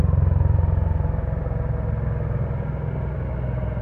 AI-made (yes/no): no